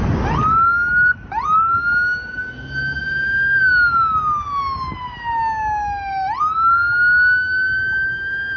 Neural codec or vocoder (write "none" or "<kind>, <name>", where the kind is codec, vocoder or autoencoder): none